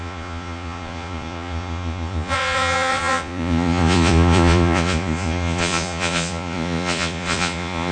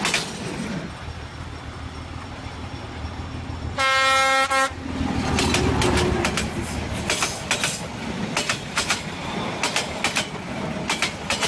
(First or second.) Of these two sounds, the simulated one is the first